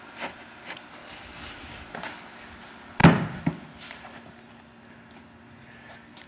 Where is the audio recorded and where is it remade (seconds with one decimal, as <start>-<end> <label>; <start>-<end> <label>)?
0.0-1.0 recorded; 1.0-1.5 remade; 1.5-6.3 recorded